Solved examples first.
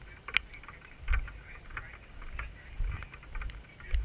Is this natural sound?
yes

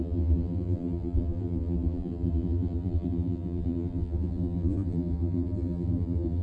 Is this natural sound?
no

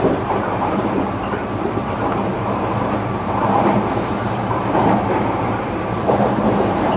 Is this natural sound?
no